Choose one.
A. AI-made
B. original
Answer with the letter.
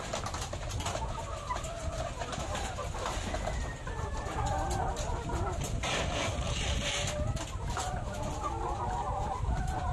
B